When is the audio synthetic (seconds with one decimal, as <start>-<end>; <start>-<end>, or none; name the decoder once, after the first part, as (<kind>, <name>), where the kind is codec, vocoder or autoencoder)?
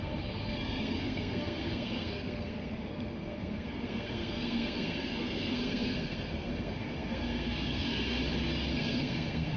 0.0-8.2 (codec, SNAC); 8.7-9.6